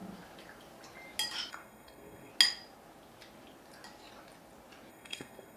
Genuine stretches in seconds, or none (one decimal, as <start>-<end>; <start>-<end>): 0.0-1.5; 2.3-4.9